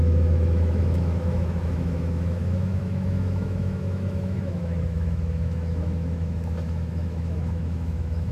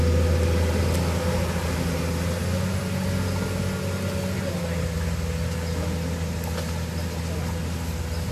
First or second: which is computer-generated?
first